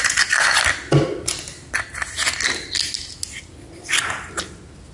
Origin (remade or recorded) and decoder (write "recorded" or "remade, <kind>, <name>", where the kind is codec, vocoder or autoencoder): recorded